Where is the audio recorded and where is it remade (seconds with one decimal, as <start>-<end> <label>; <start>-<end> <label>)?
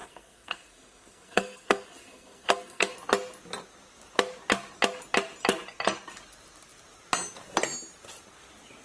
0.0-2.9 remade; 2.9-8.8 recorded